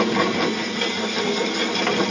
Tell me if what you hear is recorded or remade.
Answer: recorded